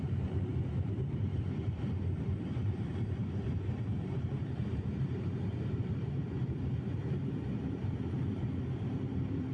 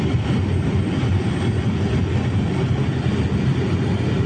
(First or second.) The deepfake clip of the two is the first